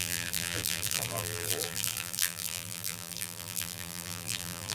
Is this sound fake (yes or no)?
yes